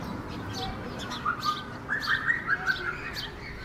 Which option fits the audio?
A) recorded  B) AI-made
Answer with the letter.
A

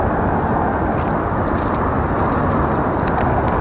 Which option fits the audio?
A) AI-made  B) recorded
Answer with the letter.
B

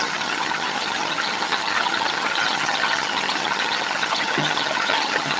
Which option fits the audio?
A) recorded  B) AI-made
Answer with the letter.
B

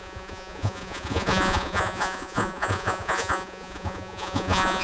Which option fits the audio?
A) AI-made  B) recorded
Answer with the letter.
A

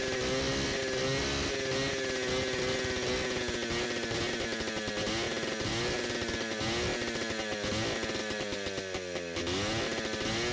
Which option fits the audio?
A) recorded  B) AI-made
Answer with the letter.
A